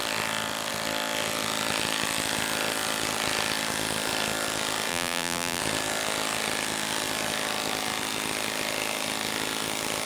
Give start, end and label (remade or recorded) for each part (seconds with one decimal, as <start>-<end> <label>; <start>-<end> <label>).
0.0-4.9 recorded; 4.9-5.6 remade; 5.6-10.1 recorded